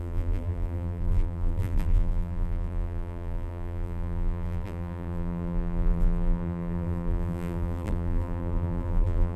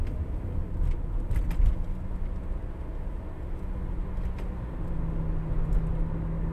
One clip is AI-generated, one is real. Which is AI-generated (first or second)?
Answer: first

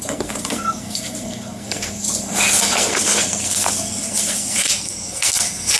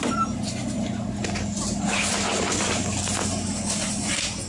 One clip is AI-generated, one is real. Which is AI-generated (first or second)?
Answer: first